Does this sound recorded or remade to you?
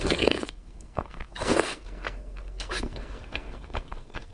remade